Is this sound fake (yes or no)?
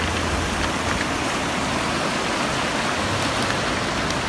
no